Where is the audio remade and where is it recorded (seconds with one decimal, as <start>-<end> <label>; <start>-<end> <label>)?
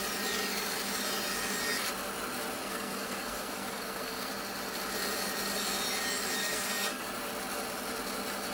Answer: 0.0-2.6 recorded; 2.6-4.3 remade; 4.3-6.4 recorded; 6.4-7.0 remade; 7.0-8.5 recorded